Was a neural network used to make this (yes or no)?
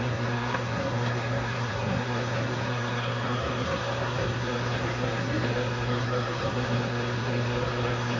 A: yes